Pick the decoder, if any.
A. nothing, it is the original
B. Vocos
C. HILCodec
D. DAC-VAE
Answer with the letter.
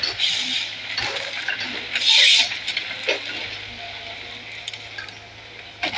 A